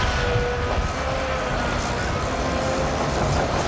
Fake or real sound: real